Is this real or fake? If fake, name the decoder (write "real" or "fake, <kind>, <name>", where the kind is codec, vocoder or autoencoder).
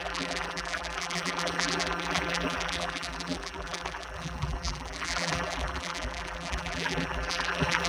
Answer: fake, vocoder, BigVGAN v2